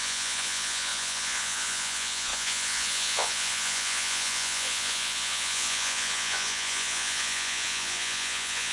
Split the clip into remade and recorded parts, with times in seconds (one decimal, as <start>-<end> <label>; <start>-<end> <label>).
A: 0.0-8.7 remade

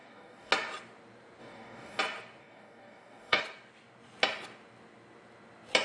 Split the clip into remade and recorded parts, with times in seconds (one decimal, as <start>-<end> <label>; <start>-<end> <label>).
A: 0.0-0.5 remade; 0.5-1.4 recorded; 1.4-2.0 remade; 2.0-2.4 recorded; 2.4-3.4 remade; 3.4-5.8 recorded

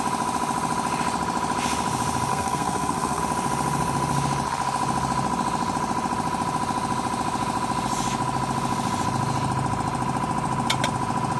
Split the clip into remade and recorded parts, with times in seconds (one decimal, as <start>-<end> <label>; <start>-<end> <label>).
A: 0.0-2.3 recorded; 2.3-3.2 remade; 3.2-11.4 recorded

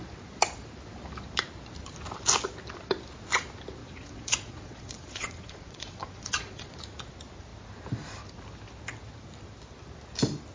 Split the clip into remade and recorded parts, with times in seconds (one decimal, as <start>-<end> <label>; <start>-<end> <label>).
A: 0.0-3.8 recorded; 3.8-6.8 remade; 6.8-10.5 recorded

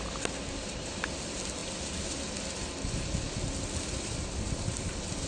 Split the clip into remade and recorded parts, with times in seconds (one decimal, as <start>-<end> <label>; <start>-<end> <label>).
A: 0.0-5.3 recorded

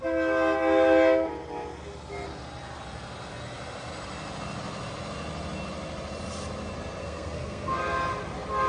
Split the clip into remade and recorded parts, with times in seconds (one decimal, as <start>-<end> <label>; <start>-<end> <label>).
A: 0.0-7.0 recorded; 7.0-7.8 remade; 7.8-8.7 recorded

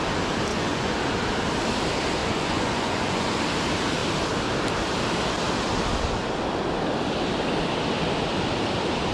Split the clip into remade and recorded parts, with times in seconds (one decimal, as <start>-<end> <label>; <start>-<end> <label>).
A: 0.0-0.5 recorded; 0.5-1.0 remade; 1.0-2.2 recorded; 2.2-3.4 remade; 3.4-9.1 recorded

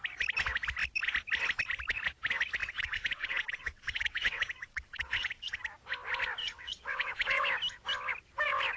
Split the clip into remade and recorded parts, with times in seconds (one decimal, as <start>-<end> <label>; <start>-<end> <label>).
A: 0.0-2.6 recorded; 2.6-5.6 remade; 5.6-6.4 recorded; 6.4-7.4 remade; 7.4-8.8 recorded